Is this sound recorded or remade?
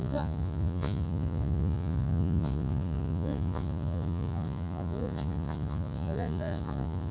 remade